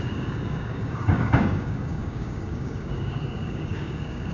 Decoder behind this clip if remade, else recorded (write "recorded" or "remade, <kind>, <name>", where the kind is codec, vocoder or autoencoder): remade, codec, DAC